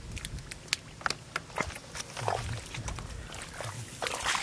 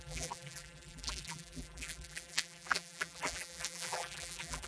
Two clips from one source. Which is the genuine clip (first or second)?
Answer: first